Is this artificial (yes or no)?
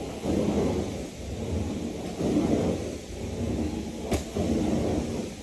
no